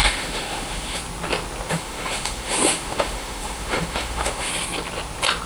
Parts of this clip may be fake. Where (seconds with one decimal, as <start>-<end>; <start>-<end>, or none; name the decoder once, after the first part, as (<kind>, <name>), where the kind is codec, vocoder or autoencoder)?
0.0-1.0 (autoencoder, DAC-VAE); 1.7-4.5